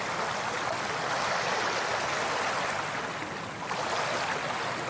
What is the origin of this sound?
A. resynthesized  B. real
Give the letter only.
B